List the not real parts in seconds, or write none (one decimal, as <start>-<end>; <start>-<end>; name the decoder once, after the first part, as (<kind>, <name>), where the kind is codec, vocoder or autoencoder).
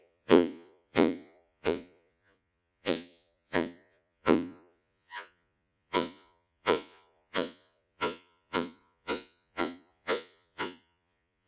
0.0-11.5 (vocoder, Vocos)